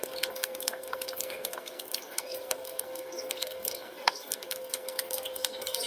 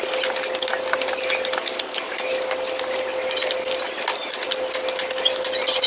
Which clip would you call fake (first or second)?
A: first